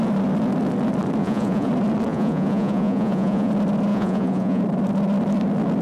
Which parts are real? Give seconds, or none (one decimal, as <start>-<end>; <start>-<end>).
0.0-1.2; 1.7-2.1; 3.5-3.9; 4.6-5.8